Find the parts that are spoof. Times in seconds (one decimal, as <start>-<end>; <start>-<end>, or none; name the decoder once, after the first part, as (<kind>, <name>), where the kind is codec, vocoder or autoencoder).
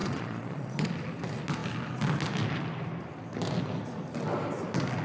0.0-0.9 (vocoder, Vocos)